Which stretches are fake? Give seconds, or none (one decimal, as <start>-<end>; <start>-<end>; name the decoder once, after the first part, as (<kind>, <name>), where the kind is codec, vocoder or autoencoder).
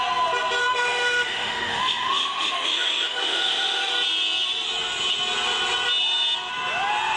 0.6-3.9 (autoencoder, DAC-VAE)